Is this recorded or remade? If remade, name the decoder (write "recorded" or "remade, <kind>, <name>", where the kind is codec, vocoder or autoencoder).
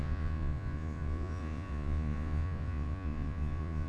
remade, vocoder, Vocos